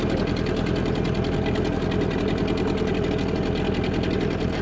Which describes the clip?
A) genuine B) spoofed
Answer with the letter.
A